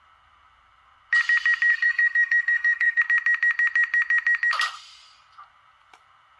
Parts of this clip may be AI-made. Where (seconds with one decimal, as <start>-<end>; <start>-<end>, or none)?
1.7-3.0